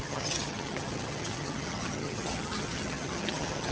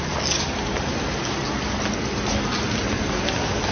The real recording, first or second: second